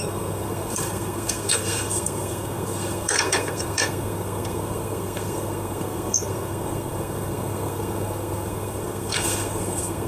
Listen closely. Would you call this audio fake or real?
fake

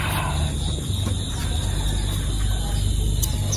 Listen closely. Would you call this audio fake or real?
real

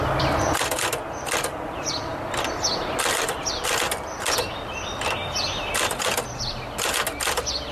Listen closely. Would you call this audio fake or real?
real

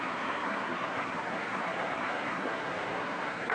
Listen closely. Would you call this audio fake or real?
fake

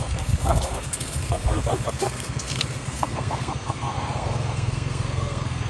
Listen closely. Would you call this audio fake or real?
fake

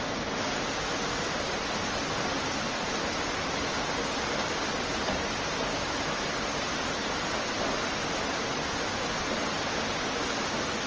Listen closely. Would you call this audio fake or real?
real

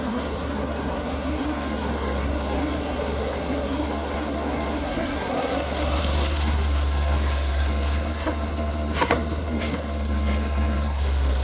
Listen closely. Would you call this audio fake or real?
fake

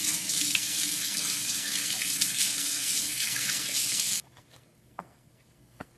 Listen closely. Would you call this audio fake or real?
fake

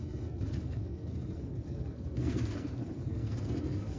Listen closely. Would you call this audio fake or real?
fake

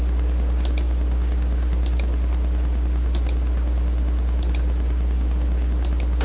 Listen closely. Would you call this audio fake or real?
real